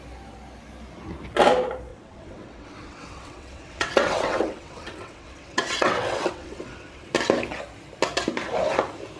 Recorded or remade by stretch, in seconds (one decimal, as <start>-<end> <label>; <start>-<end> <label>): 0.0-1.9 recorded; 1.9-7.1 remade; 7.1-9.2 recorded